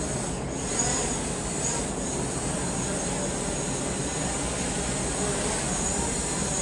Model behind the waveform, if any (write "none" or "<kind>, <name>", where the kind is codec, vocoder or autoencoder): none